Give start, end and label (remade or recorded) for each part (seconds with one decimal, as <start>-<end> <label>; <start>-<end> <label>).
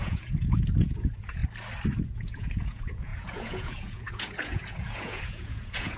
0.0-1.4 remade; 1.4-2.0 recorded; 2.0-6.0 remade